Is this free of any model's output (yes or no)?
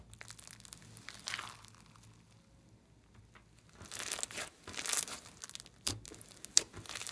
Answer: yes